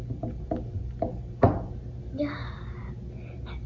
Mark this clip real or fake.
real